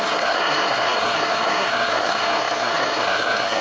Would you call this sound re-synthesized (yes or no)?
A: yes